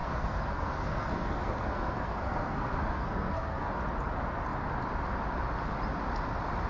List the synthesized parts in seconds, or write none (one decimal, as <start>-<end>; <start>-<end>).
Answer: 0.0-3.7